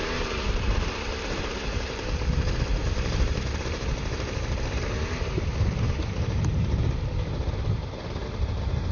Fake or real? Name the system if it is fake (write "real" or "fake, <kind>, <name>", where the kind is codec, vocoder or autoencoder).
fake, vocoder, BigVGAN v2